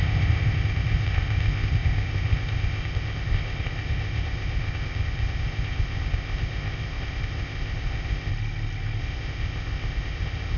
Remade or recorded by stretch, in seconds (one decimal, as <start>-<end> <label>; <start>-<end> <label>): 0.0-8.3 remade; 8.3-9.0 recorded; 9.0-10.6 remade